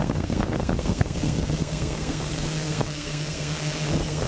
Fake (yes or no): yes